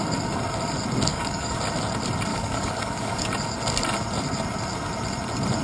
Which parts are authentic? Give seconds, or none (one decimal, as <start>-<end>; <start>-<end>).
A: 0.0-1.1; 1.6-2.3; 3.3-5.6